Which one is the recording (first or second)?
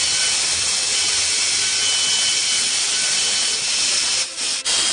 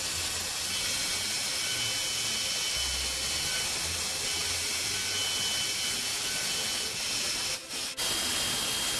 second